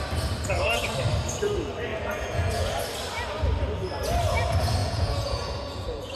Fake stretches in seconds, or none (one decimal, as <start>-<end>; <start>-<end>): 1.9-2.7; 4.8-6.2